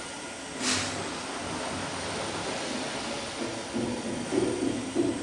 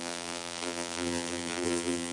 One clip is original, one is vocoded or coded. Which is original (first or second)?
first